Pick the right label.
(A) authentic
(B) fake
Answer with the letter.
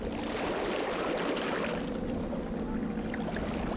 A